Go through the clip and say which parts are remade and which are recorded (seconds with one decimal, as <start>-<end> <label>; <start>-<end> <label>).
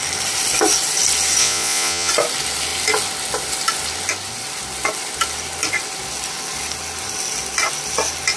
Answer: 0.0-1.4 recorded; 1.4-2.1 remade; 2.1-8.4 recorded